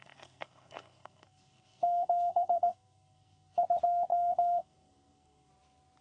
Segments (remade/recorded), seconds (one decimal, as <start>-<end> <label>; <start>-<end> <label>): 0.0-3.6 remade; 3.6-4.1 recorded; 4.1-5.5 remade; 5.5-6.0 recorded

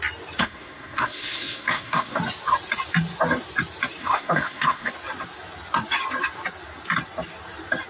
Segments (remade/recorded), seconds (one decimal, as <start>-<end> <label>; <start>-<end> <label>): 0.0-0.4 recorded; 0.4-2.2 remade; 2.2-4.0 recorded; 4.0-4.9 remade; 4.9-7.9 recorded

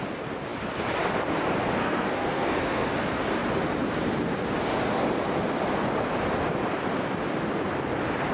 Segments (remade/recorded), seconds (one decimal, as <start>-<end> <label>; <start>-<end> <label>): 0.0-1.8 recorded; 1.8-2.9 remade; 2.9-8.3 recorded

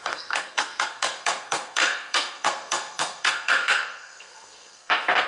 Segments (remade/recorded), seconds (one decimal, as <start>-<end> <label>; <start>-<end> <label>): 0.0-5.3 remade

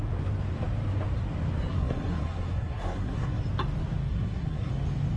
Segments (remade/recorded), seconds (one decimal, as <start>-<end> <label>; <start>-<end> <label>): 0.0-1.7 recorded; 1.7-3.4 remade; 3.4-4.1 recorded; 4.1-4.7 remade; 4.7-5.2 recorded